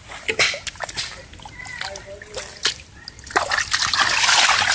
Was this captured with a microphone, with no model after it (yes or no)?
yes